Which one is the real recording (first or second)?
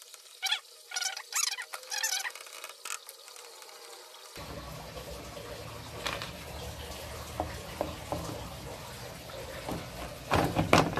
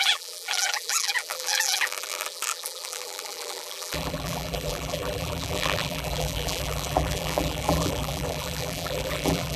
first